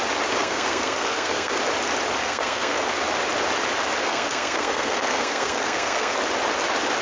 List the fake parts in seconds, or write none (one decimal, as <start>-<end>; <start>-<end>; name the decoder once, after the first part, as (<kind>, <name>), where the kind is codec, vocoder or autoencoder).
0.4-1.6 (codec, SNAC); 2.2-2.8; 4.0-6.2